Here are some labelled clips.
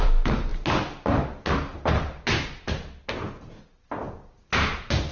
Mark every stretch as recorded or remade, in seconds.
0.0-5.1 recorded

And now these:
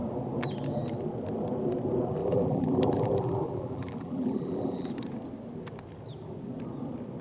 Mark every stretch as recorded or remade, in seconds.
0.0-2.2 recorded; 2.2-4.9 remade; 4.9-7.2 recorded

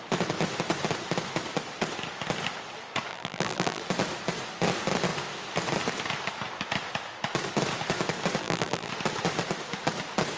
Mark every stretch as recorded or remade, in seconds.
0.0-3.1 recorded; 3.1-3.8 remade; 3.8-8.4 recorded; 8.4-8.9 remade; 8.9-10.4 recorded

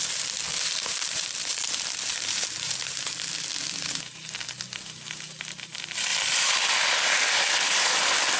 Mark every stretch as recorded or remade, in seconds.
0.0-0.5 recorded; 0.5-1.5 remade; 1.5-2.1 recorded; 2.1-3.1 remade; 3.1-6.1 recorded; 6.1-6.6 remade; 6.6-8.4 recorded